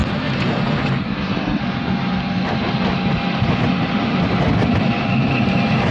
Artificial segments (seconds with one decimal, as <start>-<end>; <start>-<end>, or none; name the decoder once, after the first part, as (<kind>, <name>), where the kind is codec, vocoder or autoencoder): 1.0-1.6 (codec, SNAC)